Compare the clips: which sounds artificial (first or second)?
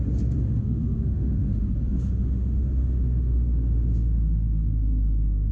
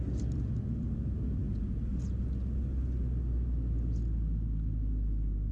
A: first